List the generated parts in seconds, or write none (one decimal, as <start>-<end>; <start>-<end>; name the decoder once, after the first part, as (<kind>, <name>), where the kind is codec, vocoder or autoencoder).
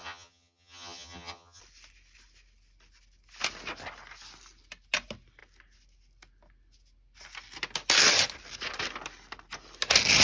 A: 0.0-1.6 (vocoder, HiFi-GAN)